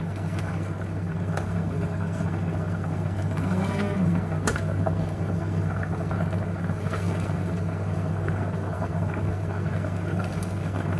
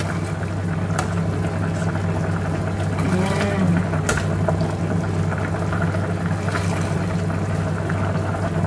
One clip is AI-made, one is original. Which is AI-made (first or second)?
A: first